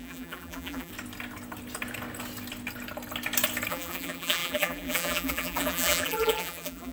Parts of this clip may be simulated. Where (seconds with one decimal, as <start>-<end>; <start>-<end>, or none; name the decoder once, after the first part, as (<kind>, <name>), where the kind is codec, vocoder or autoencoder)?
0.0-0.9 (vocoder, BigVGAN v2); 3.7-6.9